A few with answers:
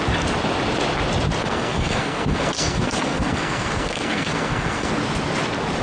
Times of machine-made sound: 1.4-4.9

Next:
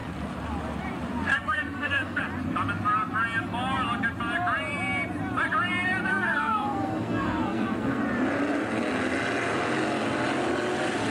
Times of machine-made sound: 1.3-2.2; 6.1-8.0

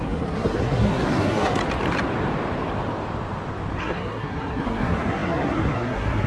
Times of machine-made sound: 0.0-1.6; 3.8-6.3

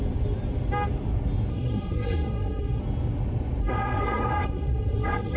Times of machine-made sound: 1.5-2.8; 3.6-5.4

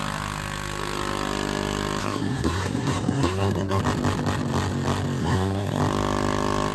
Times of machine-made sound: 2.0-3.8; 5.2-5.8